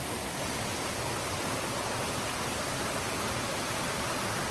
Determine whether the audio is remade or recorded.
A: recorded